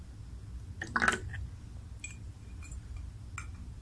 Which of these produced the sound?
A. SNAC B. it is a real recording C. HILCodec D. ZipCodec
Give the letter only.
B